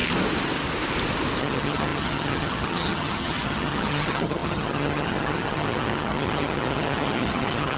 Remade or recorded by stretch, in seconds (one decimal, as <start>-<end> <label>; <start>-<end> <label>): 0.0-1.4 recorded; 1.4-7.8 remade